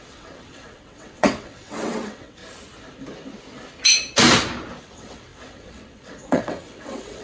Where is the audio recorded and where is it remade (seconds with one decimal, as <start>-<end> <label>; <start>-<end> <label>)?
0.0-2.4 remade; 2.4-4.8 recorded; 4.8-7.2 remade